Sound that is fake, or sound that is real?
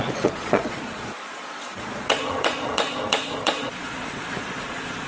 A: fake